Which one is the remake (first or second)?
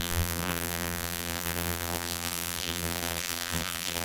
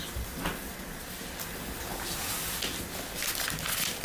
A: first